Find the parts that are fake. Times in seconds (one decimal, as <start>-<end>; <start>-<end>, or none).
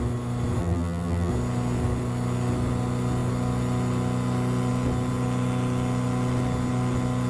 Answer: 0.6-1.3